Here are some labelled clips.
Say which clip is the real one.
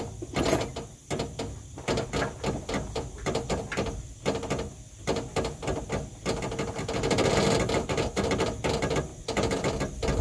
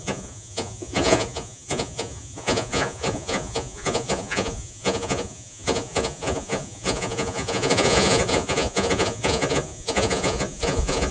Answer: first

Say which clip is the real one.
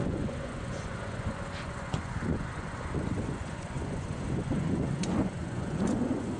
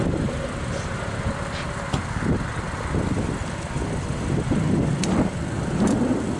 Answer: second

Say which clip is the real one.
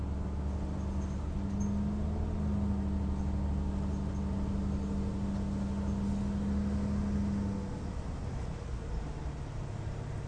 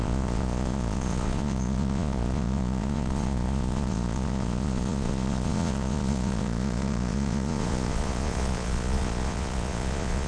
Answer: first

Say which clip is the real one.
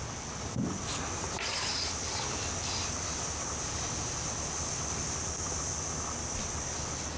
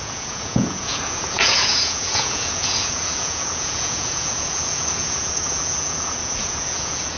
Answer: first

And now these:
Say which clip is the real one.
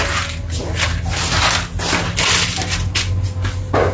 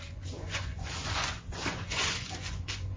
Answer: first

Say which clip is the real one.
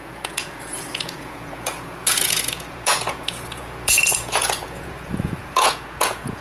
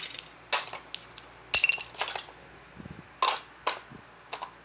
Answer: second